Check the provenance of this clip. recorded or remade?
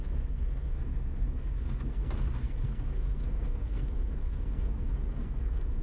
remade